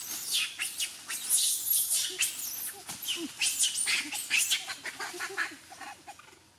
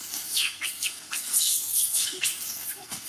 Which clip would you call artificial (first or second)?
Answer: second